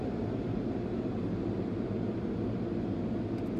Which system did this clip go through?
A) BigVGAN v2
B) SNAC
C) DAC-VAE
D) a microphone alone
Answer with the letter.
D